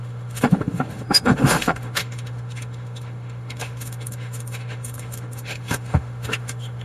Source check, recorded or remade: remade